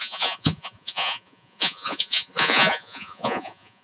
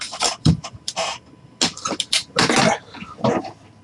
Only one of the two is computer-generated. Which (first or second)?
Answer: first